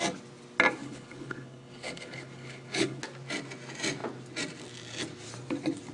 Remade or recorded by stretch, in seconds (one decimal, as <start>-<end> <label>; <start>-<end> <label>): 0.0-0.8 recorded; 0.8-3.0 remade; 3.0-5.9 recorded